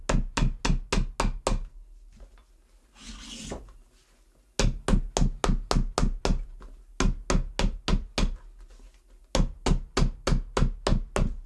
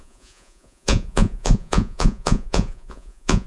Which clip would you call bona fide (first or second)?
first